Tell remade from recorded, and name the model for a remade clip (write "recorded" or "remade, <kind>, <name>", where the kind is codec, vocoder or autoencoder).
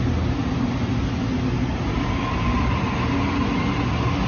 recorded